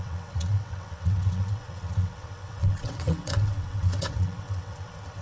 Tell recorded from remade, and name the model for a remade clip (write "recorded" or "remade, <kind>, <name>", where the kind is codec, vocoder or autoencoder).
remade, vocoder, WaveNeXt